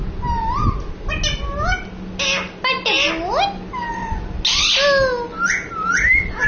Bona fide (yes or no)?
yes